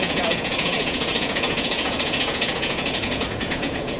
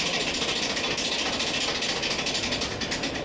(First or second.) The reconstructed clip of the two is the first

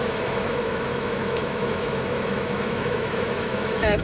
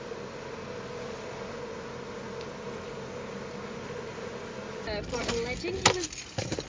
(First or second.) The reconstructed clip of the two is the first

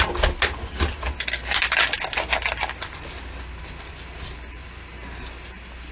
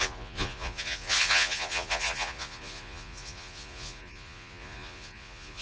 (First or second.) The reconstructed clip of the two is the second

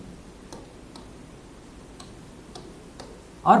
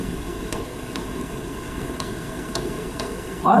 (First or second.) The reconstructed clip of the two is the second